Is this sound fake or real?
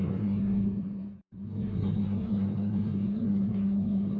fake